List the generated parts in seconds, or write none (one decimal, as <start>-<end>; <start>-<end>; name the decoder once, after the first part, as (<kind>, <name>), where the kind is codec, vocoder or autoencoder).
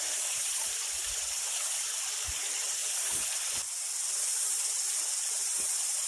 none